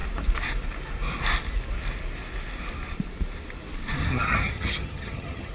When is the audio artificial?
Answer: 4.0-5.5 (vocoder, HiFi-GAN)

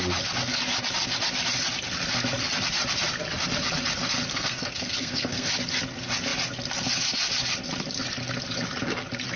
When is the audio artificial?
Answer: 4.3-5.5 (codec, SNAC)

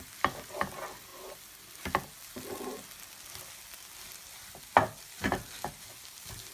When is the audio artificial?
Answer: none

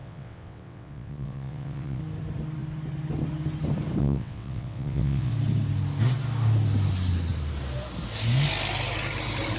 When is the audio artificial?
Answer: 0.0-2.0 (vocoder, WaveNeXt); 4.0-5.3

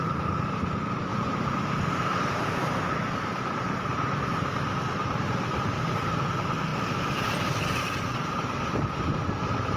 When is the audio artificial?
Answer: 1.1-6.3 (vocoder, BigVGAN v2); 6.7-9.2

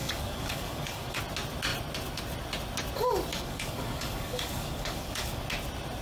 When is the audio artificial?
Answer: 0.0-1.2 (codec, DAC); 3.3-5.4